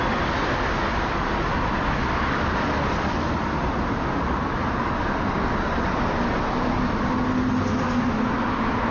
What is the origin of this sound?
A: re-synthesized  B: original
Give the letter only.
B